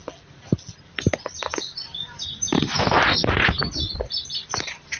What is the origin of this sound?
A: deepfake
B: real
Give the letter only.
B